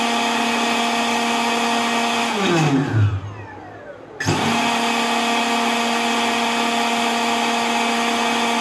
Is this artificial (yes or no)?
no